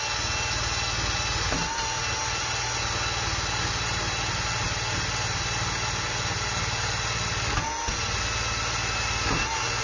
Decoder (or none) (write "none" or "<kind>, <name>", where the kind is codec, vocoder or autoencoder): none